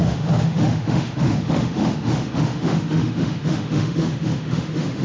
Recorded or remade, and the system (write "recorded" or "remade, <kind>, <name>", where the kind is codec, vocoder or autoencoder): remade, autoencoder, DAC-VAE